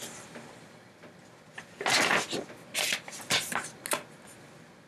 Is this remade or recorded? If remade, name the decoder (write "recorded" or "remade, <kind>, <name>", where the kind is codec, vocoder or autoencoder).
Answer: recorded